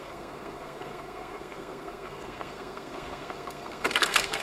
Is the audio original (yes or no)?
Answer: no